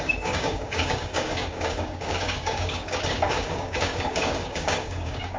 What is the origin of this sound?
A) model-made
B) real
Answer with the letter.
A